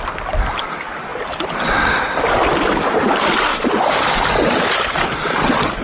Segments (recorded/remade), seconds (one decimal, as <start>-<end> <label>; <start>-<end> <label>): 0.0-1.1 recorded; 1.1-1.9 remade; 1.9-3.5 recorded; 3.5-5.8 remade